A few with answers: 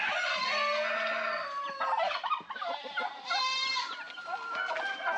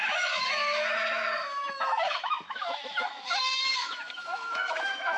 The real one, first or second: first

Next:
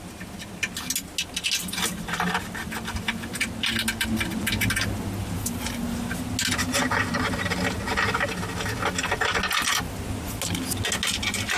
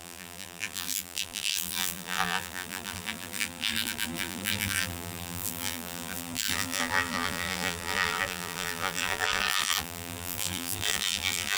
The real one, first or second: first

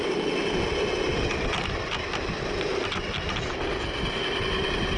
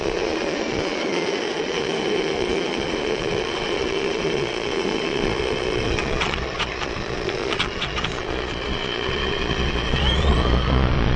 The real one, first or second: first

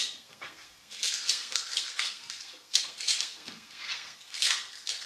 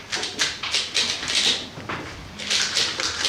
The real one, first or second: second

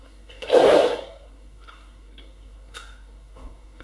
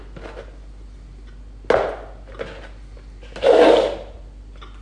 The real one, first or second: second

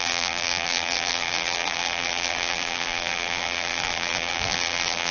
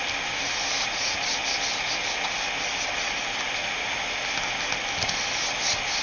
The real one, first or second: second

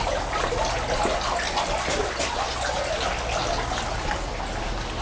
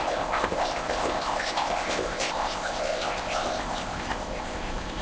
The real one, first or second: first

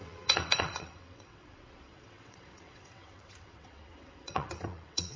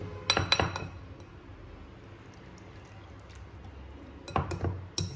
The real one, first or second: second